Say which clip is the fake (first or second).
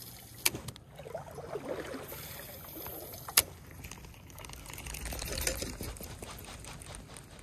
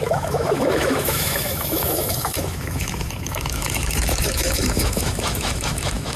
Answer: second